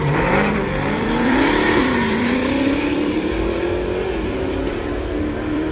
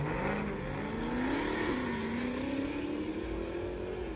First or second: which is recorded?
second